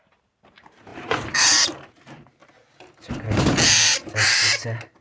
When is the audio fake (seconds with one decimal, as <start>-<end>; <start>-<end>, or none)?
0.0-2.4; 4.1-5.0